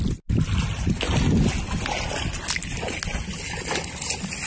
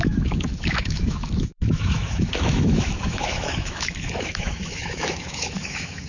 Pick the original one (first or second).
first